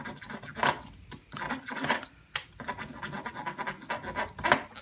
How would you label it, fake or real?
real